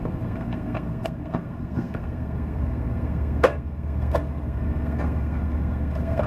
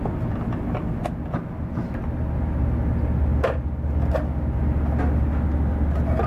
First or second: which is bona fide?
second